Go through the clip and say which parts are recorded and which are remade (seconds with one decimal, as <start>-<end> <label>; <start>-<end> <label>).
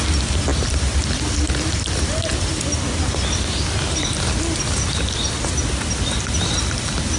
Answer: 0.0-7.2 recorded